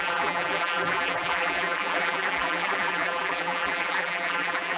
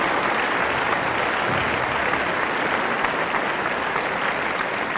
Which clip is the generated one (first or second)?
first